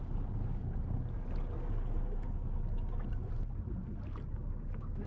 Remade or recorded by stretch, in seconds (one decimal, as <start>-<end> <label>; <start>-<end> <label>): 0.0-5.1 recorded

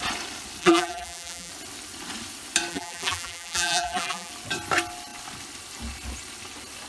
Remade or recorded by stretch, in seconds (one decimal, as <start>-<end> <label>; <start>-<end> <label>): 0.0-0.6 recorded; 0.6-1.5 remade; 1.5-2.7 recorded; 2.7-4.3 remade; 4.3-6.9 recorded

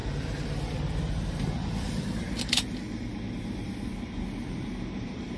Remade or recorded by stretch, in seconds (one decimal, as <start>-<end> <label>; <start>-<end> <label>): 0.0-3.9 remade; 3.9-4.5 recorded; 4.5-5.4 remade

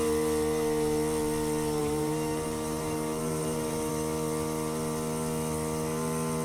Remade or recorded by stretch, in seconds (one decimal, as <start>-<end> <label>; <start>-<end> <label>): 0.0-1.8 recorded; 1.8-3.9 remade; 3.9-6.4 recorded